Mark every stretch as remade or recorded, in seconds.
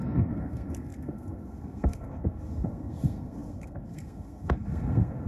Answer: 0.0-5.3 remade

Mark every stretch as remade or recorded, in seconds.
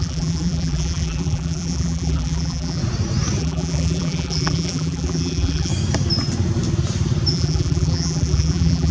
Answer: 0.0-2.8 remade; 2.8-3.4 recorded; 3.4-5.7 remade; 5.7-7.3 recorded; 7.3-8.9 remade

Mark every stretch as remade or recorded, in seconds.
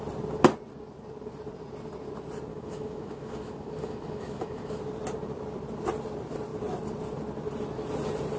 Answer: 0.0-2.5 recorded; 2.5-4.8 remade; 4.8-8.4 recorded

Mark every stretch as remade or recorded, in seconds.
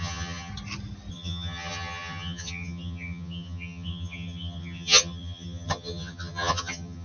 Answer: 0.0-0.5 remade; 0.5-1.1 recorded; 1.1-7.0 remade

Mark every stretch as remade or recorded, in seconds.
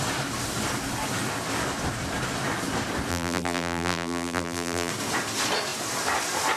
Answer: 0.0-3.1 recorded; 3.1-4.9 remade; 4.9-6.6 recorded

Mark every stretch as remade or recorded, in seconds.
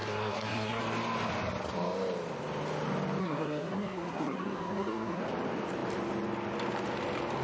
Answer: 0.0-0.8 remade; 0.8-3.2 recorded; 3.2-5.2 remade; 5.2-7.4 recorded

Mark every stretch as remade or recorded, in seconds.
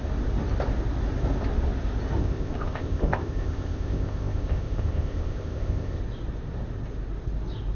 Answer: 0.0-2.2 recorded; 2.2-6.0 remade; 6.0-7.8 recorded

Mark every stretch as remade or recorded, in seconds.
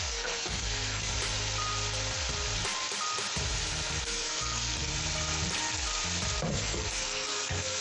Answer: 0.0-1.1 remade; 1.1-4.0 recorded; 4.0-4.9 remade; 4.9-6.5 recorded; 6.5-7.8 remade